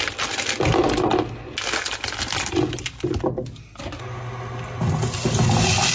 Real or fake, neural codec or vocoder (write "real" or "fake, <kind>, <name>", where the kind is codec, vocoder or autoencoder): real